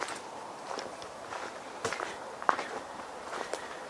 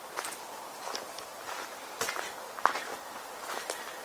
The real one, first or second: second